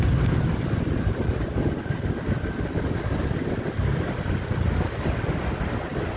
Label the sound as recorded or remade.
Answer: recorded